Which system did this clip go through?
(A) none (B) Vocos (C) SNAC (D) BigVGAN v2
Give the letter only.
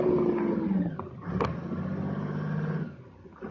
A